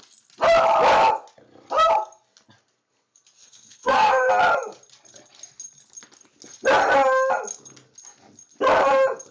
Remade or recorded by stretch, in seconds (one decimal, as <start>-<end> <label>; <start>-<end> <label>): 0.0-3.4 recorded; 3.4-4.3 remade; 4.3-9.3 recorded